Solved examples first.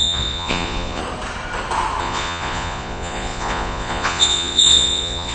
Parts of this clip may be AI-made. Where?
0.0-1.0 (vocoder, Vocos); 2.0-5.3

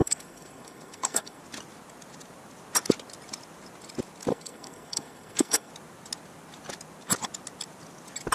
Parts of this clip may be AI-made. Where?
0.0-1.4 (codec, SNAC); 4.3-5.7

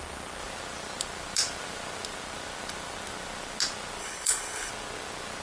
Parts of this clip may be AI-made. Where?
4.0-4.7 (codec, HILCodec)